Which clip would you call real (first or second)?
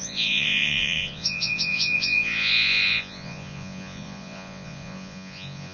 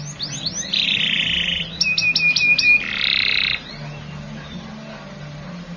second